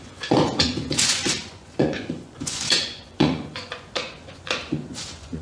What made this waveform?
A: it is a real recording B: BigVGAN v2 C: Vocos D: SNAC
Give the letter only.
C